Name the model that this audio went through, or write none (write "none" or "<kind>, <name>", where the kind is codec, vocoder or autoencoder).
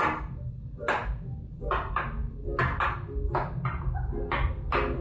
none